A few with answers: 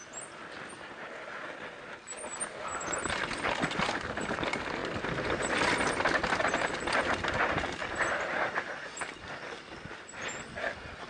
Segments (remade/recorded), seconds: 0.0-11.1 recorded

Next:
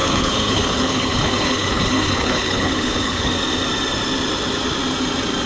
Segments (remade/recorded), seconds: 0.0-3.3 remade; 3.3-5.5 recorded

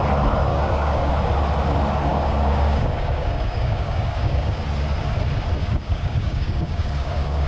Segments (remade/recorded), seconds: 0.0-0.5 recorded; 0.5-1.1 remade; 1.1-2.1 recorded; 2.1-4.6 remade; 4.6-5.6 recorded; 5.6-7.5 remade